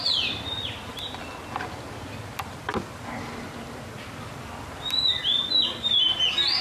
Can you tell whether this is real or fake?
real